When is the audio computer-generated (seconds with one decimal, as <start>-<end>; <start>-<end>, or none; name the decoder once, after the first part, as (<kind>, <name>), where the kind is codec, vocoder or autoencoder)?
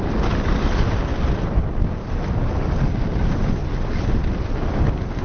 none